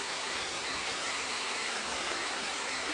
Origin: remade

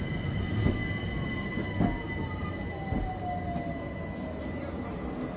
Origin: recorded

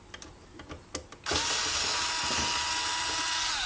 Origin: recorded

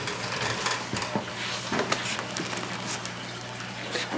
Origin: recorded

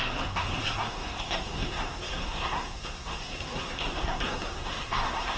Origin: remade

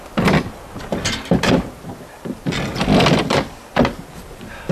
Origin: recorded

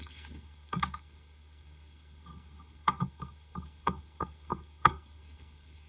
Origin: remade